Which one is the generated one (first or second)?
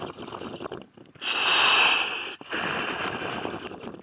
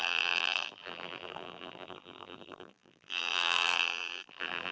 second